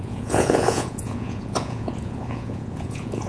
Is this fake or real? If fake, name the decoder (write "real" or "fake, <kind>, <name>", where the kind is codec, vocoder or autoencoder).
fake, vocoder, Vocos